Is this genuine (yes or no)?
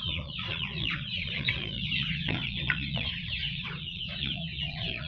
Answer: no